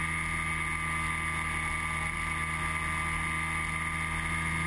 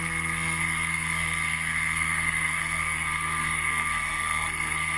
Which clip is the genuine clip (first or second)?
first